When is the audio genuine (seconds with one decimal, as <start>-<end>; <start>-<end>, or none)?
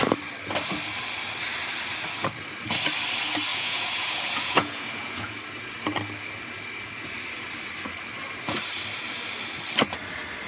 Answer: 0.0-3.5; 5.4-10.5